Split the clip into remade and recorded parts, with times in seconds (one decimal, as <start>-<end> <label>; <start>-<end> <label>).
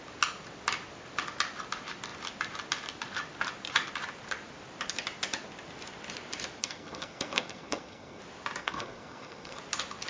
0.0-6.6 recorded; 6.6-8.2 remade; 8.2-8.6 recorded; 8.6-9.6 remade; 9.6-10.1 recorded